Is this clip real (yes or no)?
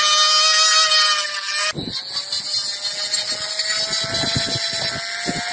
yes